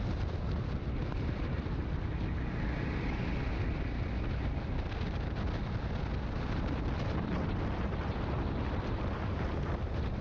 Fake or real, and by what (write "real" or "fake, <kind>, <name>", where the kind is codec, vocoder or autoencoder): real